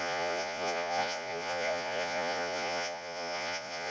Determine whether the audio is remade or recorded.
remade